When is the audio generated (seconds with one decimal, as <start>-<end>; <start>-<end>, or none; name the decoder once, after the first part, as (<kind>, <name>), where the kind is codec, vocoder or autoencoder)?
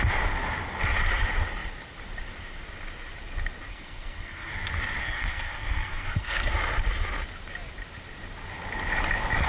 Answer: 3.7-4.5 (codec, SNAC); 5.0-6.5